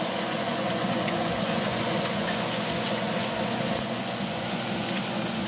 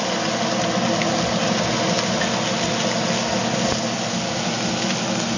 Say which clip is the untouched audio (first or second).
second